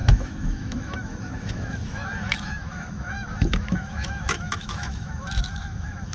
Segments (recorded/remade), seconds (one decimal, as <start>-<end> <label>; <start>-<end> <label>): 0.0-6.1 remade